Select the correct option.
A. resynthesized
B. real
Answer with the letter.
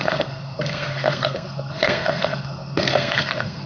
A